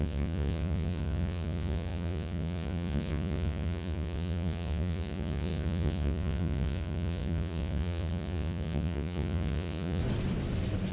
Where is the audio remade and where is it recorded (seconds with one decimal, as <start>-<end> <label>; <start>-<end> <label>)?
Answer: 0.0-10.0 remade; 10.0-10.9 recorded